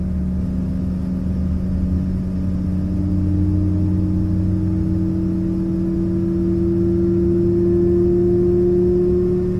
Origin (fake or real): real